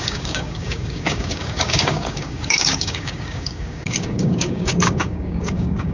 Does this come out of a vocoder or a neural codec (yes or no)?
yes